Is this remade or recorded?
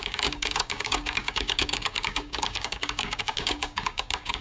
remade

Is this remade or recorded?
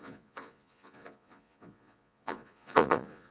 remade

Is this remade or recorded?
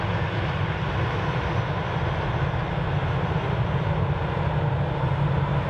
recorded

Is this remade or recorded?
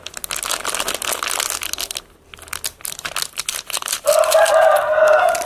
recorded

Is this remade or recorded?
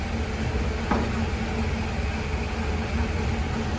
recorded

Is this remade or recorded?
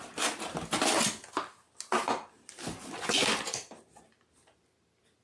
recorded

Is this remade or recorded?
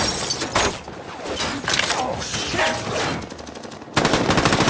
recorded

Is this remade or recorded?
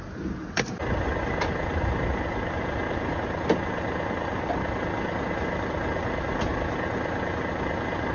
recorded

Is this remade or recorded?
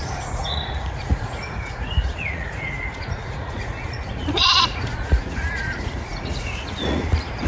remade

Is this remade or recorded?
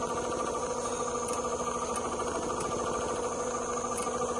recorded